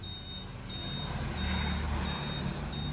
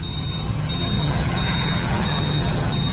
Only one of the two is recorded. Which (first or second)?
first